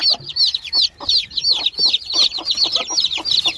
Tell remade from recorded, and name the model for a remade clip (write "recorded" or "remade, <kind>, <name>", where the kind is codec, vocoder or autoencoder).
recorded